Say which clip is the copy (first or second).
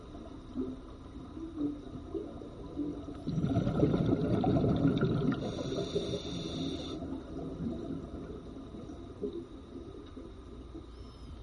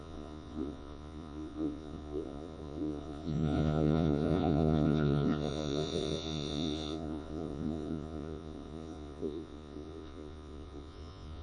second